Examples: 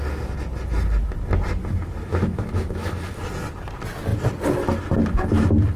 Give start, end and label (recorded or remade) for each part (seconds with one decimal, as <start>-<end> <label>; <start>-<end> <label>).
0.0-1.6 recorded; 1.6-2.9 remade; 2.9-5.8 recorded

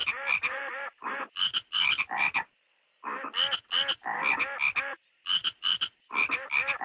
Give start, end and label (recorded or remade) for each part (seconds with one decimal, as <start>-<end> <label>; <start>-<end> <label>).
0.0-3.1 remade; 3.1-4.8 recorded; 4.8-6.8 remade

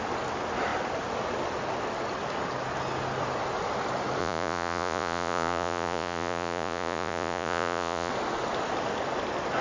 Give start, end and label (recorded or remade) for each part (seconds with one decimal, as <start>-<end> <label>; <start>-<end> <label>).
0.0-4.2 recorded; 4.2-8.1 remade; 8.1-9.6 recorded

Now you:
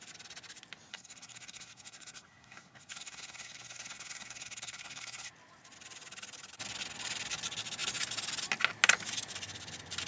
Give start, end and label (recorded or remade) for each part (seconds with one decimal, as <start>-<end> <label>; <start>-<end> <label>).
0.0-0.9 recorded; 0.9-5.3 remade; 5.3-10.1 recorded

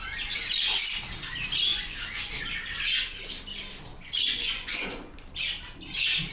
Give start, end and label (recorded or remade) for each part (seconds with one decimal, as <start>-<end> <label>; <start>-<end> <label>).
0.0-1.7 recorded; 1.7-2.3 remade; 2.3-3.9 recorded; 3.9-5.1 remade; 5.1-6.3 recorded